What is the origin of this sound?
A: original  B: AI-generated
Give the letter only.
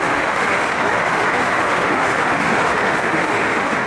B